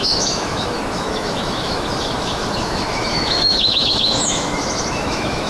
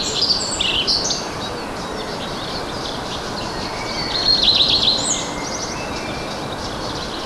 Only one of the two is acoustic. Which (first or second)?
second